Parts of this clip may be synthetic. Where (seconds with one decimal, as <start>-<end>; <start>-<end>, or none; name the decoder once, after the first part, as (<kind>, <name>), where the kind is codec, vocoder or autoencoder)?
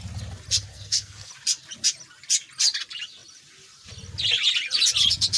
0.7-1.3 (codec, SNAC)